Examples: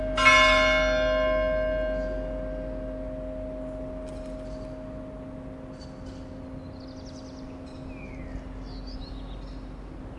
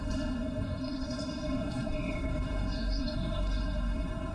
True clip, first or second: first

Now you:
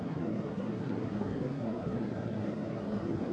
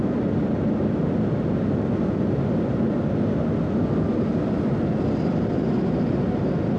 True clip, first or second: second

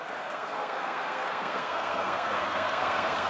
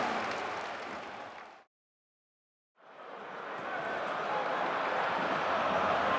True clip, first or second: second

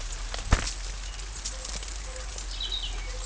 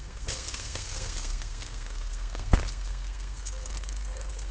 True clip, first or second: first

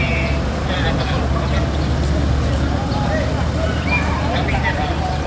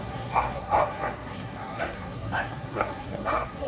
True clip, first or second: first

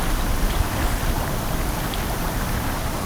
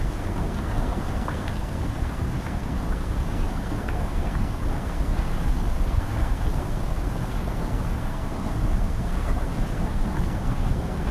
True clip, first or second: first